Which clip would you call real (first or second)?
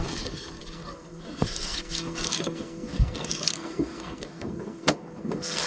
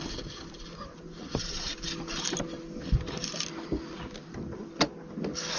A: second